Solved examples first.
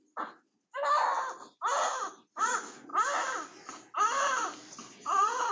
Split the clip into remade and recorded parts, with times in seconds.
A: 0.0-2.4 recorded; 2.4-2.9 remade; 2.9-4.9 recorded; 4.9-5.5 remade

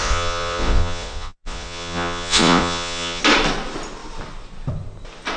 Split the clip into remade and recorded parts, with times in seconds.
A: 0.0-3.2 remade; 3.2-5.4 recorded